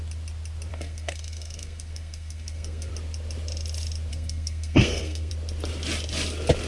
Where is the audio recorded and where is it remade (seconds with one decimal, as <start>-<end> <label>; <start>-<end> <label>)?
0.0-0.7 recorded; 0.7-2.9 remade; 2.9-4.1 recorded; 4.1-5.3 remade; 5.3-6.7 recorded